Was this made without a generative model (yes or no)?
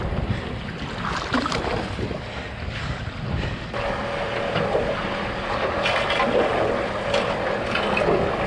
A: yes